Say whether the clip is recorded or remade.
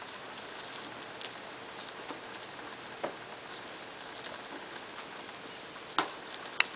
recorded